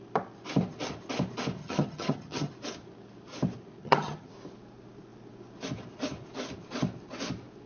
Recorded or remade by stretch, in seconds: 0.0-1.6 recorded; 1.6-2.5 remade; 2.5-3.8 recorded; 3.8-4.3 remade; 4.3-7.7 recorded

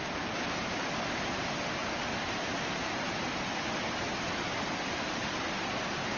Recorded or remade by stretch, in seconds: 0.0-6.2 recorded

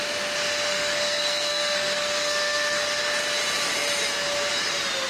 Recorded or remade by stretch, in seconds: 0.0-0.7 recorded; 0.7-3.0 remade; 3.0-5.1 recorded

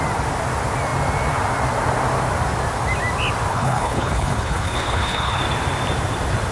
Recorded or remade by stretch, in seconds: 0.0-3.5 recorded; 3.5-5.4 remade; 5.4-6.5 recorded

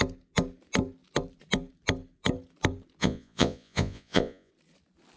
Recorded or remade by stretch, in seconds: 0.0-3.0 recorded; 3.0-4.5 remade; 4.5-5.2 recorded

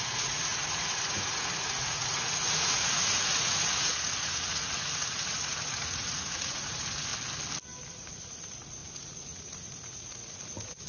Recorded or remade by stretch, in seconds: 0.0-7.1 remade; 7.1-7.9 recorded; 7.9-10.9 remade

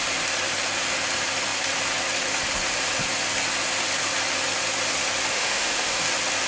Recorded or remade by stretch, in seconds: 0.0-5.3 recorded; 5.3-6.0 remade; 6.0-6.5 recorded